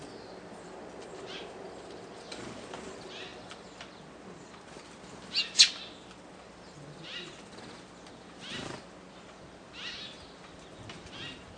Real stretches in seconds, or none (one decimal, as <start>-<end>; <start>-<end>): 0.0-11.6